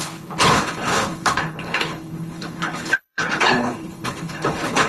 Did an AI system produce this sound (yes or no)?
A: yes